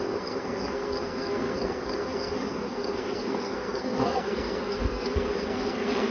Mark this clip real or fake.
fake